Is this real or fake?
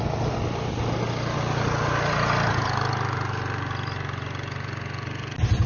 real